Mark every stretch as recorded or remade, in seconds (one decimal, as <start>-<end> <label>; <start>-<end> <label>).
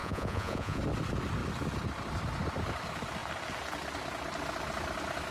0.0-0.8 remade; 0.8-5.3 recorded